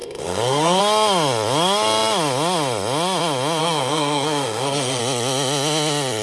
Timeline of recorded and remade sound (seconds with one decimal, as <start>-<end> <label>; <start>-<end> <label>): 0.0-0.8 remade; 0.8-3.6 recorded; 3.6-5.0 remade; 5.0-6.2 recorded